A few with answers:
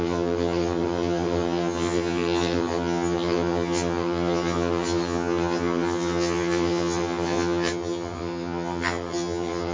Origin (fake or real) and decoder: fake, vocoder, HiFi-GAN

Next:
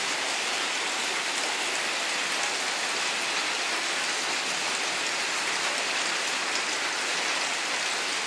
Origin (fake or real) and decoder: real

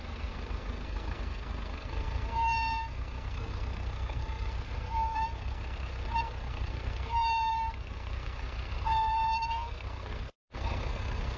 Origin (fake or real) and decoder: fake, codec, SNAC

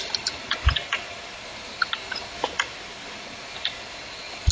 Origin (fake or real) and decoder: real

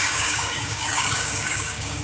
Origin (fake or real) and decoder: fake, codec, DAC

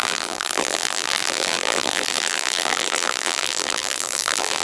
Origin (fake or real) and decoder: fake, vocoder, BigVGAN v2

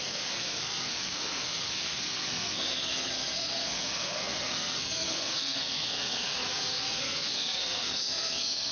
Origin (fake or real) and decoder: fake, codec, SNAC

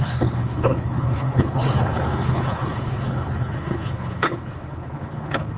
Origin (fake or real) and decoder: fake, codec, HILCodec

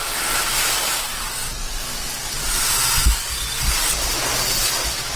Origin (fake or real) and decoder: real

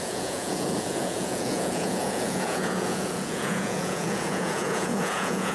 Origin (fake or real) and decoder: fake, vocoder, Vocos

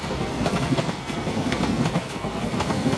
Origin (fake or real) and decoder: fake, codec, SNAC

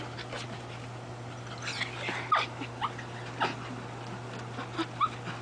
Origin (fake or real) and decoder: real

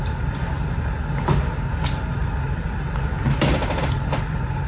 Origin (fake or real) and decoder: real